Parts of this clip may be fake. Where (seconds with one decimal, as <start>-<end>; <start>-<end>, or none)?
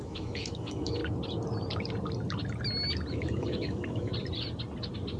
0.0-1.0; 3.1-4.1